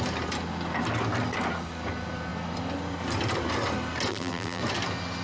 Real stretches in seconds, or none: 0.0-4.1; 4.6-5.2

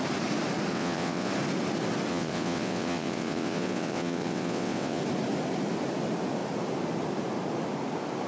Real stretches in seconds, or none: 0.0-0.7; 1.3-2.1; 5.0-8.3

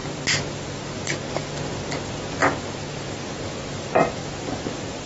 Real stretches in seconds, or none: 0.0-1.4; 2.4-3.0

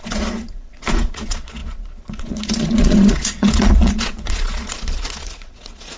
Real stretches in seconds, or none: none

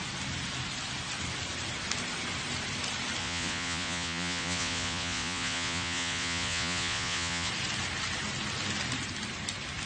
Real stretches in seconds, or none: 0.0-3.2; 7.5-9.9

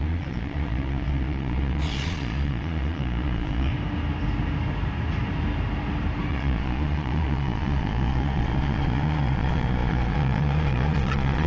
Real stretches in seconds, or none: 3.7-6.3

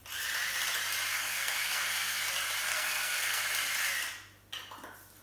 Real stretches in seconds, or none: 0.0-1.1; 2.3-2.7; 3.4-5.2